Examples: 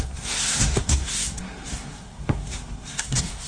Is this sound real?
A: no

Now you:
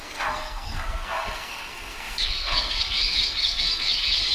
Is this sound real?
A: no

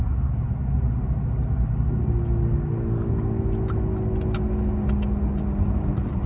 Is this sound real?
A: yes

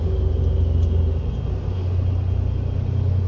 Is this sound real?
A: yes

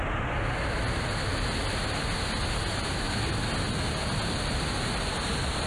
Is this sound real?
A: yes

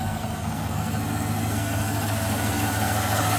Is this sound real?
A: no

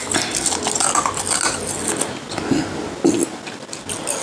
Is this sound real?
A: yes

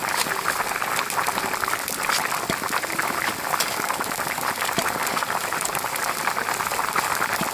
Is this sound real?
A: yes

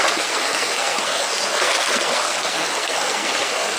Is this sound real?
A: no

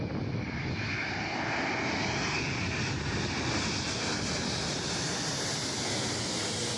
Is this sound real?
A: yes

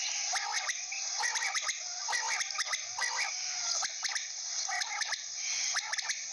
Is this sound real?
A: yes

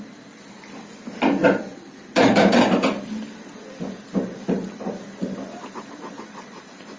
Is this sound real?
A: yes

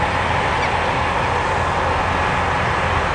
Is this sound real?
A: yes